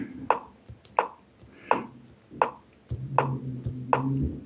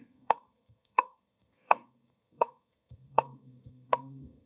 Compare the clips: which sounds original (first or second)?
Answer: first